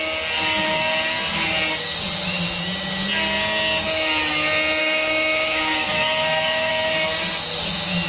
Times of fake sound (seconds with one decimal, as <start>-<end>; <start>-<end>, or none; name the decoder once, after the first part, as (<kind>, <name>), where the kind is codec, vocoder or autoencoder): 4.8-6.7 (autoencoder, DAC-VAE)